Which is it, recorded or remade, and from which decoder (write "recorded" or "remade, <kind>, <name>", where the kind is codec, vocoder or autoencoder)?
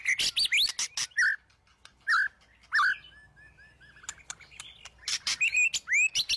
recorded